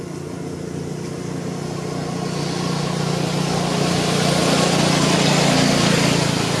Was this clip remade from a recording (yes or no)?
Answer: no